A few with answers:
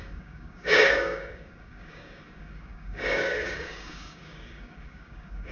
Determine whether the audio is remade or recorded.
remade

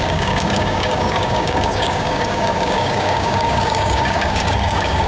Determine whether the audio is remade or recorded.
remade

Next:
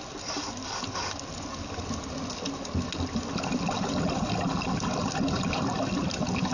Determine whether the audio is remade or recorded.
recorded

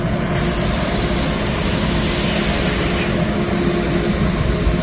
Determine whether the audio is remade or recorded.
recorded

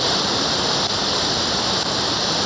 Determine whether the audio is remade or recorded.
recorded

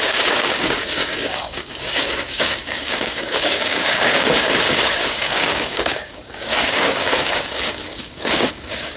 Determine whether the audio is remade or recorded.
remade